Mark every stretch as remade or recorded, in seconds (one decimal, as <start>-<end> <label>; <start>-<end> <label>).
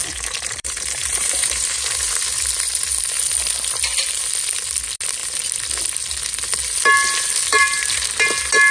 0.0-2.2 remade; 2.2-7.5 recorded; 7.5-8.0 remade; 8.0-8.7 recorded